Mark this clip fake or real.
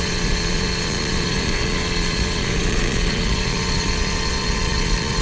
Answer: fake